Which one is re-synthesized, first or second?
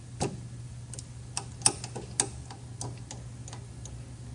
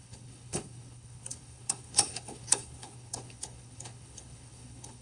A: second